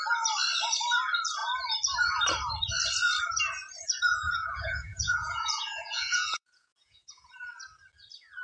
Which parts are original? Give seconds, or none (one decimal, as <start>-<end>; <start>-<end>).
0.0-4.1; 7.3-8.4